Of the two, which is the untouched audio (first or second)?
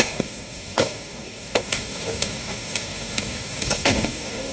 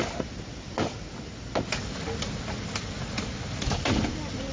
second